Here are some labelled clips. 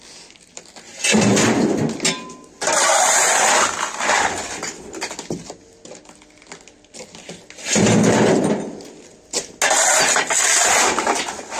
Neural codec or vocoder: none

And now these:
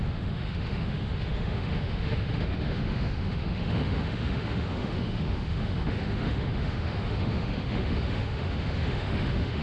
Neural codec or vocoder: autoencoder, DAC-VAE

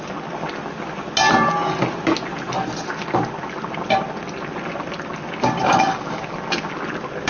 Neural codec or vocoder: none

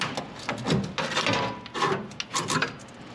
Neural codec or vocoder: none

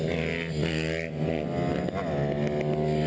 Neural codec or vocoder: none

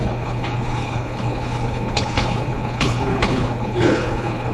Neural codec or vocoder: codec, HILCodec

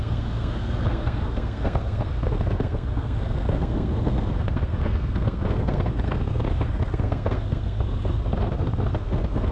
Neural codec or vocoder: codec, SNAC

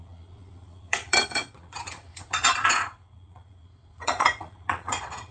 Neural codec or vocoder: vocoder, Vocos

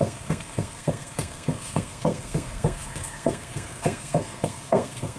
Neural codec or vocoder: codec, SNAC